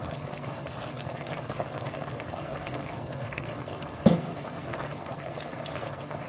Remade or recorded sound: remade